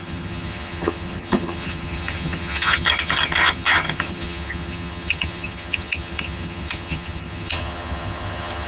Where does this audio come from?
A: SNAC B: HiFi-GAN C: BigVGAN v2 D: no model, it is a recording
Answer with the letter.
B